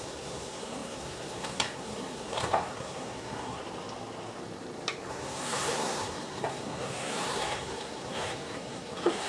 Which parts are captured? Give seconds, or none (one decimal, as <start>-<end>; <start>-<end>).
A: 3.6-5.1